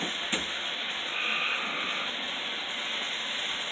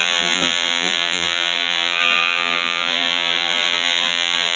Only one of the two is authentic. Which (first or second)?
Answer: first